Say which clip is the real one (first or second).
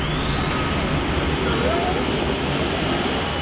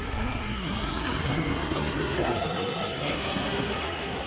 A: first